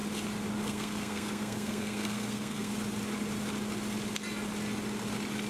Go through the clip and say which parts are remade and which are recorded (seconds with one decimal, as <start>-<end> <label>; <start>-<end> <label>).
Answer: 0.0-0.6 recorded; 0.6-2.7 remade; 2.7-5.5 recorded